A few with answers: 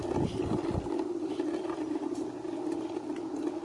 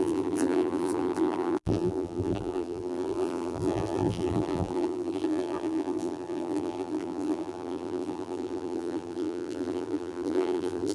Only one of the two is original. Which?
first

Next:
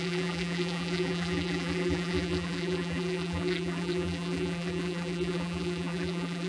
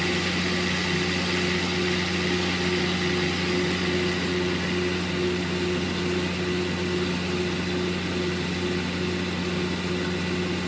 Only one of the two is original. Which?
second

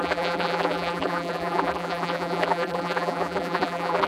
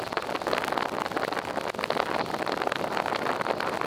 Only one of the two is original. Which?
second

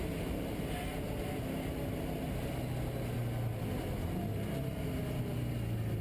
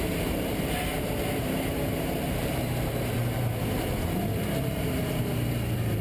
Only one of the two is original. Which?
first